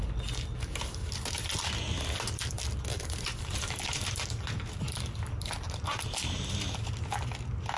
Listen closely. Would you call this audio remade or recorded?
recorded